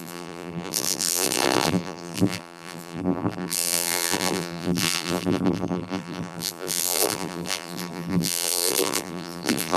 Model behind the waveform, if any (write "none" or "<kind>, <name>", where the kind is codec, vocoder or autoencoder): vocoder, BigVGAN v2